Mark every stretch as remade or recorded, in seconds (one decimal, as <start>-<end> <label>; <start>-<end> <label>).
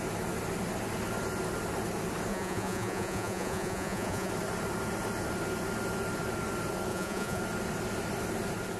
0.0-2.3 recorded; 2.3-4.3 remade; 4.3-6.9 recorded; 6.9-7.4 remade; 7.4-8.8 recorded